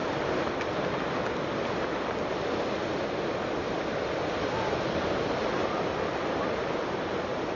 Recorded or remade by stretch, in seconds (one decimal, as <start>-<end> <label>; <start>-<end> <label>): 0.0-0.8 remade; 0.8-5.6 recorded; 5.6-6.7 remade; 6.7-7.6 recorded